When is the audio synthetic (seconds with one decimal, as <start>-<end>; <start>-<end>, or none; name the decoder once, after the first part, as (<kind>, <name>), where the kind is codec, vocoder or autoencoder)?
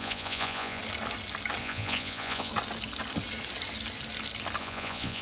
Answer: 0.0-0.8 (vocoder, Vocos); 1.6-2.5; 4.6-5.2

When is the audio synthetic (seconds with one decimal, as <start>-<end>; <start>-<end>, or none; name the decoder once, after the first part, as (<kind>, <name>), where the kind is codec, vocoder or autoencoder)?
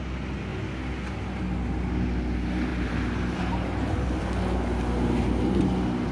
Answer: 2.7-4.2 (vocoder, BigVGAN v2)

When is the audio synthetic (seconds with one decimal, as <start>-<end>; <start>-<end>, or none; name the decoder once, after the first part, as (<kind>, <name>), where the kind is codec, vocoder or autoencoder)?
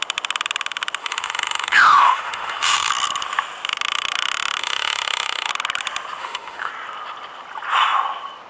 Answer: 1.0-2.9 (autoencoder, DAC-VAE); 4.6-5.5; 6.2-6.7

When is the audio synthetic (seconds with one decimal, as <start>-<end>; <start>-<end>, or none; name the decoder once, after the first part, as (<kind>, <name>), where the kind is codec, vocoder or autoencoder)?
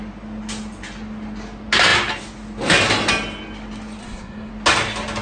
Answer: 4.0-4.5 (codec, SNAC)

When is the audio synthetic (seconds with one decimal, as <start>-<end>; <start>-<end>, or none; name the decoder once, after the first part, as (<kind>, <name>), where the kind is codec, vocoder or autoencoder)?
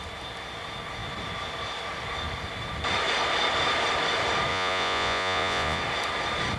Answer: 4.5-5.8 (vocoder, Vocos)